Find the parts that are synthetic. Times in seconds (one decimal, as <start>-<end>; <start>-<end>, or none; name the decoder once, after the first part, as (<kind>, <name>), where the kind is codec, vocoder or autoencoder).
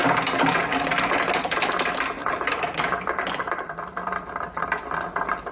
0.0-0.6 (vocoder, BigVGAN v2); 2.2-4.6